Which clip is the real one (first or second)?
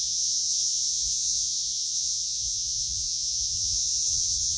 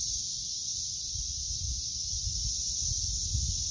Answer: second